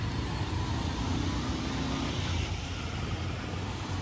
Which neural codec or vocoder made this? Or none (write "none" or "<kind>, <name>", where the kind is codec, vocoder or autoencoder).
none